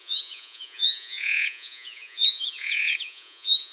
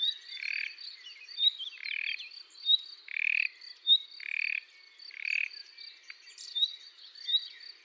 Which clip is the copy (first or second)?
first